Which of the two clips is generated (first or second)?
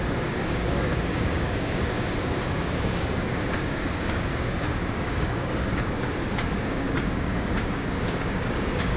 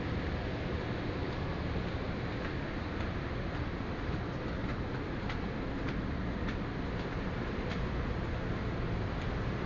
first